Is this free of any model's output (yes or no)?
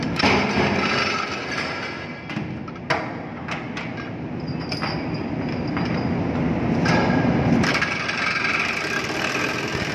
yes